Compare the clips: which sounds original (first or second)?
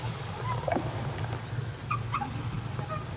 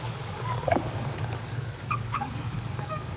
first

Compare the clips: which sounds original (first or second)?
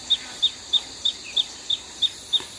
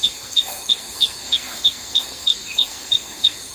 first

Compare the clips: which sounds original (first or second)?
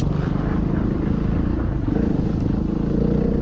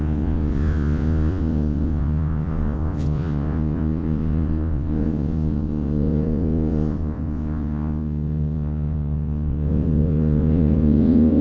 first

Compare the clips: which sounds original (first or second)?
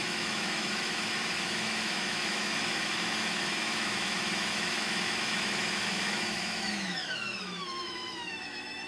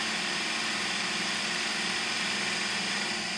second